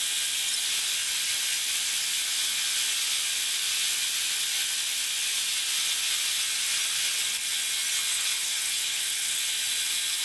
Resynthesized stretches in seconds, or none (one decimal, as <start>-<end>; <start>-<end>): 8.1-9.4